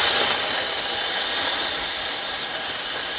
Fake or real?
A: real